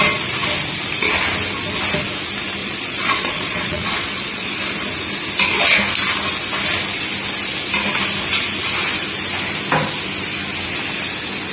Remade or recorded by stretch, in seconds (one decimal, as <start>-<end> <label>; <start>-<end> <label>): 0.0-2.6 recorded; 2.6-4.5 remade; 4.5-11.5 recorded